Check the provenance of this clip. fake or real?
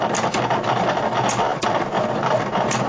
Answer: real